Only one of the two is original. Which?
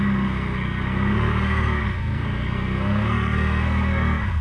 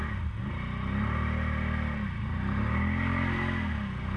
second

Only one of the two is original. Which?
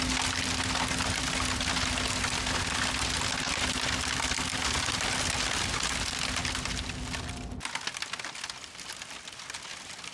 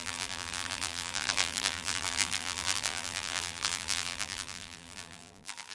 first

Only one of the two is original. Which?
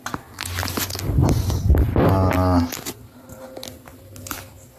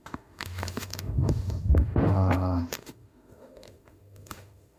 first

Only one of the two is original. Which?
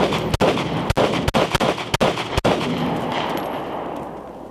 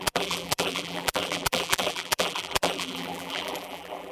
first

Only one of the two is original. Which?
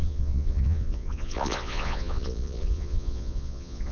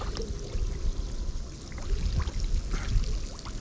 second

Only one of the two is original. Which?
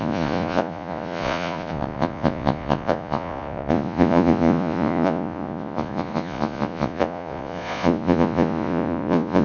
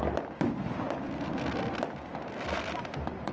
second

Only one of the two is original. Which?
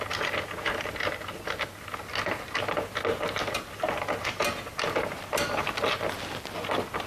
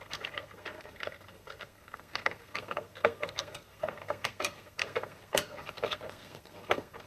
first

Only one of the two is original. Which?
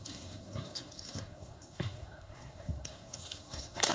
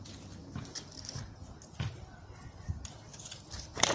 second